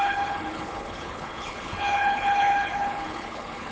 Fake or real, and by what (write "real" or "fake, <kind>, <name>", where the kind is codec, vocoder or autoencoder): fake, codec, HILCodec